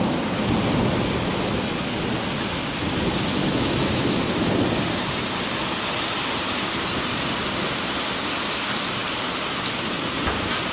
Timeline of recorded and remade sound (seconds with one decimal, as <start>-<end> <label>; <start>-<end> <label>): 0.0-3.4 recorded; 3.4-4.4 remade; 4.4-10.7 recorded